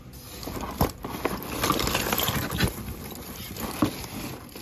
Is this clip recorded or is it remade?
recorded